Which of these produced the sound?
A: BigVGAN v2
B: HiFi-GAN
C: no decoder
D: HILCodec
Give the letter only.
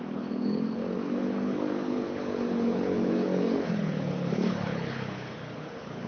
D